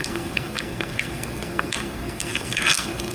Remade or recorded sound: remade